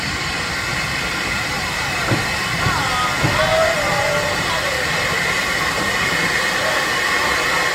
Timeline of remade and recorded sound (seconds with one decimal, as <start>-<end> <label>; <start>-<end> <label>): 0.0-0.7 recorded; 0.7-2.2 remade; 2.2-3.5 recorded; 3.5-7.0 remade; 7.0-7.7 recorded